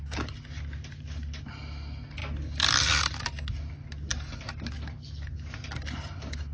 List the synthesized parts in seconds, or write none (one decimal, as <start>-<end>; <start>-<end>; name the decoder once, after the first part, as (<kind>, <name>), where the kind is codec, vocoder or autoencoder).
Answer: none